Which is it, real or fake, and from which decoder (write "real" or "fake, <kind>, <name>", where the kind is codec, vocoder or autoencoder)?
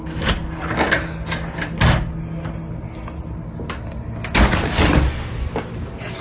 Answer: real